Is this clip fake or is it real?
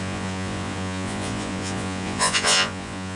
fake